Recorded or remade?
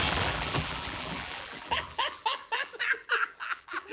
remade